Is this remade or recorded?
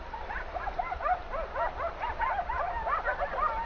recorded